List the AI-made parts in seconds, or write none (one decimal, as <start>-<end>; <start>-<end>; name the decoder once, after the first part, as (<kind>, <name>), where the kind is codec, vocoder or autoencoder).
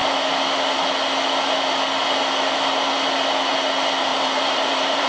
4.1-5.1 (vocoder, BigVGAN v2)